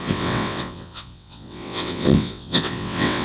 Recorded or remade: remade